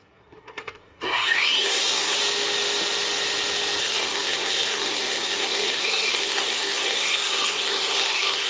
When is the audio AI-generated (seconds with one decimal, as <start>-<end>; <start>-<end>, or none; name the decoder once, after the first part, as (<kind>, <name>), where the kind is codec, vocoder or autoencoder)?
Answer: 0.0-2.2 (codec, SNAC); 3.8-8.5

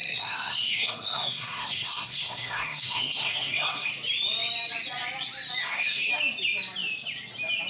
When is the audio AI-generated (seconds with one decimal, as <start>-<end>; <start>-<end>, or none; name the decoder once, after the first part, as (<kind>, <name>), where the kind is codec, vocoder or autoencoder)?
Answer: 0.0-3.9 (codec, SNAC); 5.6-6.1

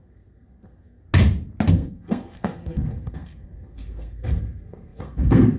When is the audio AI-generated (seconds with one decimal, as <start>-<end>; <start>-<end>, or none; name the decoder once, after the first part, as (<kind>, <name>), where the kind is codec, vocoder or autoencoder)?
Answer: 0.0-1.0 (codec, SNAC); 1.7-5.6

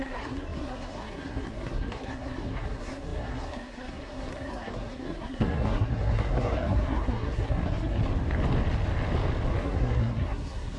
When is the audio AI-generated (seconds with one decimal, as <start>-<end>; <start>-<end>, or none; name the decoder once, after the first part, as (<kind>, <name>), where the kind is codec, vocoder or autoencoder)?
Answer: 0.0-8.0 (codec, SNAC); 9.6-10.8

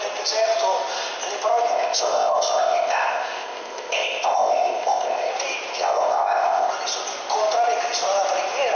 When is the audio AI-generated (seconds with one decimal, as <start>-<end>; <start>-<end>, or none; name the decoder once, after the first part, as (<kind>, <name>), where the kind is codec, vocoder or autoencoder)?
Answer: 1.7-5.3 (codec, ZipCodec); 5.7-6.7

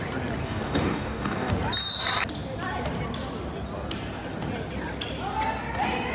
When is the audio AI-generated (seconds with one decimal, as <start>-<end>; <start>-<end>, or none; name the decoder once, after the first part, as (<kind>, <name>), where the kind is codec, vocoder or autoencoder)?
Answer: 0.4-1.5 (codec, DAC)

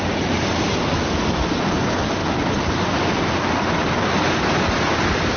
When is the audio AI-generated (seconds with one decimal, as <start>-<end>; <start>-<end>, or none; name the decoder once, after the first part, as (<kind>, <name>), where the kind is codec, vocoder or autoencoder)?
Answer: none